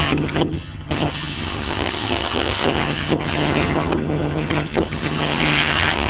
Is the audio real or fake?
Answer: fake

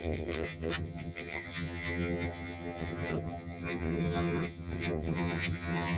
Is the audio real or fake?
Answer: fake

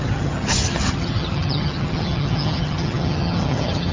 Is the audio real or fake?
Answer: fake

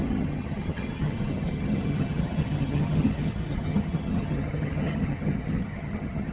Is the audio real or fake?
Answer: fake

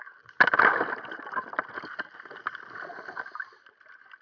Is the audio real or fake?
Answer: real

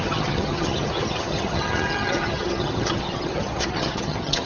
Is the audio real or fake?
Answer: fake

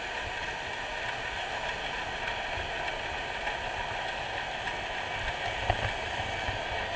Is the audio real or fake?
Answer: real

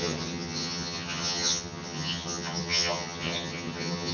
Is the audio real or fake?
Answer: fake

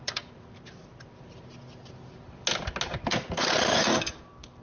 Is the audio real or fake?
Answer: real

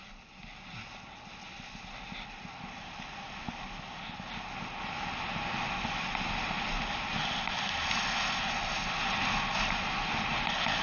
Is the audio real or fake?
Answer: real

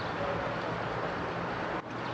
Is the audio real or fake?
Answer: real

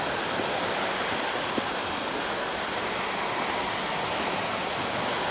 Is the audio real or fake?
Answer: real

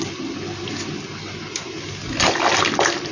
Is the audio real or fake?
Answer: real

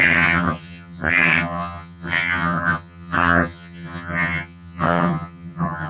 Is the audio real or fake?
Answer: fake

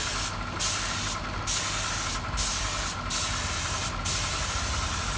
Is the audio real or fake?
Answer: real